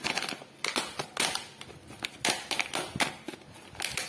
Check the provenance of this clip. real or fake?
real